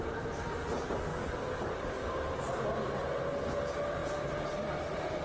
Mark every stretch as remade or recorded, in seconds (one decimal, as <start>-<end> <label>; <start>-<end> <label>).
0.0-1.1 recorded; 1.1-2.1 remade; 2.1-5.2 recorded